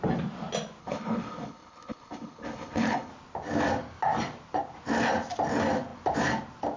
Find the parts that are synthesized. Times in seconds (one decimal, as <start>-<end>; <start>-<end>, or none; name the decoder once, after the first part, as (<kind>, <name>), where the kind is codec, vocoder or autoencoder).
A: 0.8-3.1 (codec, HILCodec)